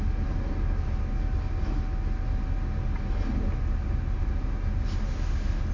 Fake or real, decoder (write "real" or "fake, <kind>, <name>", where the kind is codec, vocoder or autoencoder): real